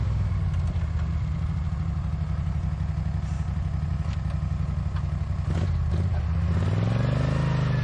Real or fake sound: real